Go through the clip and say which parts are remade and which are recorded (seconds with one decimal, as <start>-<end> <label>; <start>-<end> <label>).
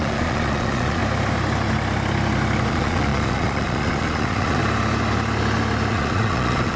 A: 0.0-1.0 remade; 1.0-2.7 recorded; 2.7-4.6 remade; 4.6-5.9 recorded; 5.9-6.8 remade